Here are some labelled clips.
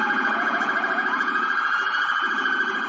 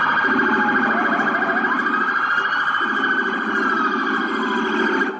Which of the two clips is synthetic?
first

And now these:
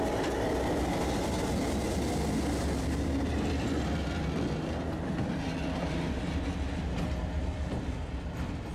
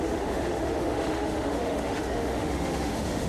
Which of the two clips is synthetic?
second